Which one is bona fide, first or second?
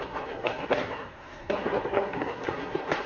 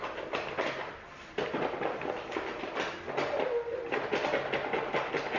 second